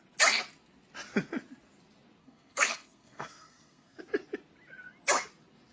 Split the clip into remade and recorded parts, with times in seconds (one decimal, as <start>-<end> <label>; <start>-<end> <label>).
0.0-2.2 recorded; 2.2-4.0 remade; 4.0-5.7 recorded